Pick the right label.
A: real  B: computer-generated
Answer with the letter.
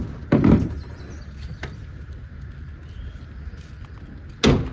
A